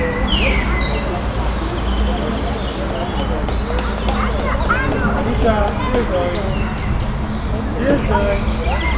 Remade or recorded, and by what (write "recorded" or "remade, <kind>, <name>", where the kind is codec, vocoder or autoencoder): recorded